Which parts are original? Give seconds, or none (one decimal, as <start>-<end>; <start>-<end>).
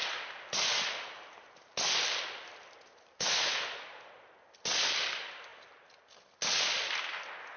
0.0-7.6